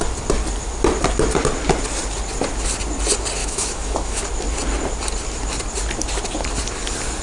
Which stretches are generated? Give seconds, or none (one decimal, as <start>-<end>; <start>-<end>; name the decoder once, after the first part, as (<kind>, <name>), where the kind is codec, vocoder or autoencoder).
3.4-4.2 (autoencoder, DAC-VAE)